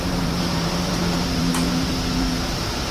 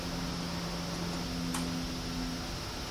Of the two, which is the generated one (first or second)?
first